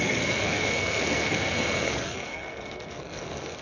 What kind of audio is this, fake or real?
fake